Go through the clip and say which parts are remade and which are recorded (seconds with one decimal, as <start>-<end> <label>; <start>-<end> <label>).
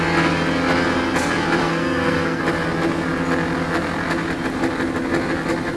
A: 0.0-1.6 recorded; 1.6-2.4 remade; 2.4-5.8 recorded